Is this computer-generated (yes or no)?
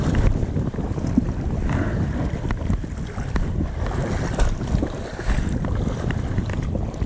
no